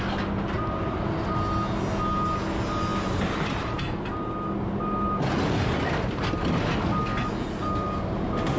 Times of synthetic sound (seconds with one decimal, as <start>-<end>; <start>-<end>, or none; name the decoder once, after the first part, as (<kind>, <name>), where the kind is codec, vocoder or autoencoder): none